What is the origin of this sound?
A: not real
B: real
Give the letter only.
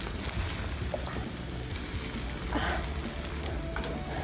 B